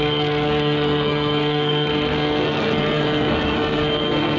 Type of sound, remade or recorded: remade